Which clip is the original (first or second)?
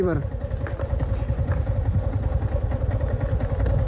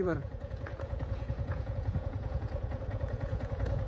first